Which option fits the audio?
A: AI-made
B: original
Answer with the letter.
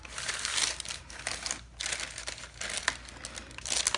B